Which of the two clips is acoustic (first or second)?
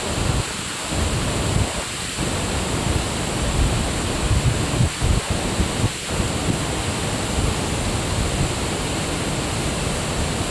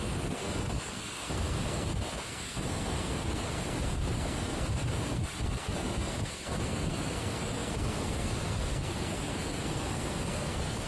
first